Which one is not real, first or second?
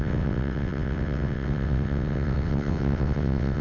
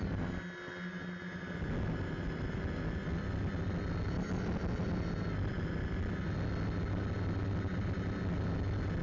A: first